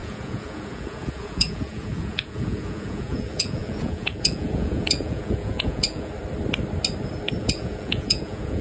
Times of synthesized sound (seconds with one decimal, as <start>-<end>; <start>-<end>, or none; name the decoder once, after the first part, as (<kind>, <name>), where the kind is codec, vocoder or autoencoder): 0.0-6.1 (vocoder, Vocos); 7.4-8.6